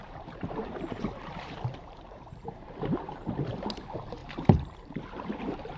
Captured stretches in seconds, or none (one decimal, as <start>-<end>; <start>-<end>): 3.5-4.2